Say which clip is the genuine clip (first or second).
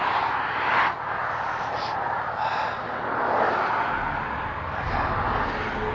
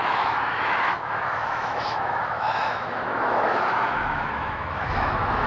first